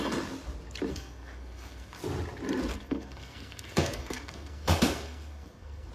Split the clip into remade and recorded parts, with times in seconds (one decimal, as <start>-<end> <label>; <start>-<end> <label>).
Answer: 0.0-0.9 recorded; 0.9-2.0 remade; 2.0-2.7 recorded; 2.7-5.9 remade